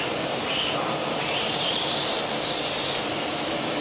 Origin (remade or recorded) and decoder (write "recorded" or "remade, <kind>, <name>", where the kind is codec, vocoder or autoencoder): recorded